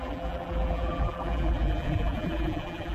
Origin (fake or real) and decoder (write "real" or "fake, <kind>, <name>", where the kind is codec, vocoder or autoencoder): fake, vocoder, BigVGAN v2